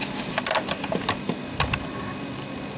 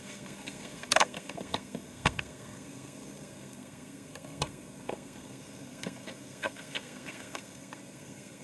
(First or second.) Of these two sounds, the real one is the first